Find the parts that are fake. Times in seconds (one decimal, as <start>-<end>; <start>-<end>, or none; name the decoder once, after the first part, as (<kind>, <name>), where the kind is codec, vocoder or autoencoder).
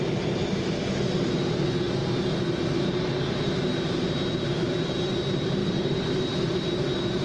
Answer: 5.6-6.2 (vocoder, BigVGAN v2)